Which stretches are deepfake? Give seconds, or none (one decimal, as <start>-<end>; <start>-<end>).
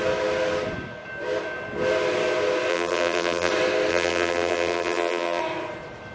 2.7-3.5; 3.9-5.4